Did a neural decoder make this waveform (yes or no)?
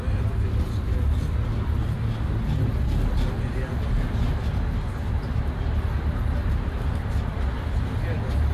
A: no